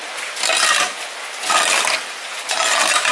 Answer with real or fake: real